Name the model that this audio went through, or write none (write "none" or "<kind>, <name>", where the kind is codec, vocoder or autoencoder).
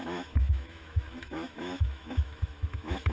autoencoder, DAC-VAE